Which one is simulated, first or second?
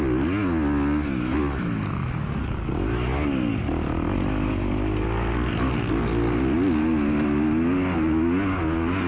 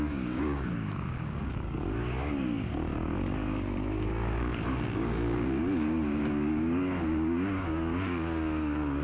second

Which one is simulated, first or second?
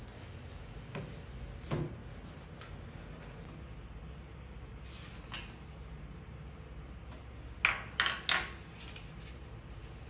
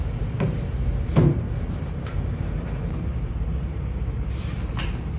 second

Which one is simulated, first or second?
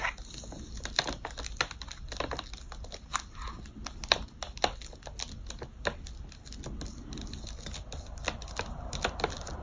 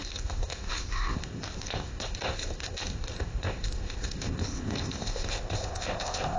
second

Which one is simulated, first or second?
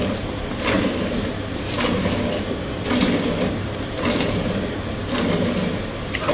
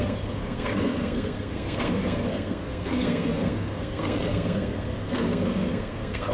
second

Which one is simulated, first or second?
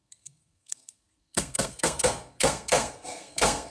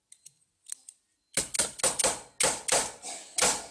first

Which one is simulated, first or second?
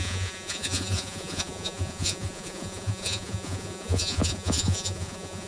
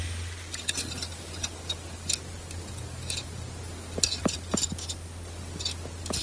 first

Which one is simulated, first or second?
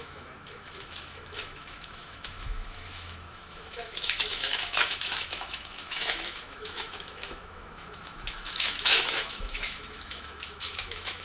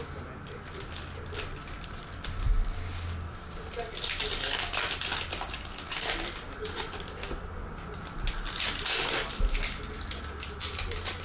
first